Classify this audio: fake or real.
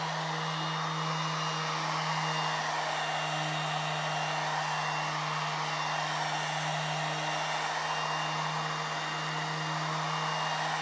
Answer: real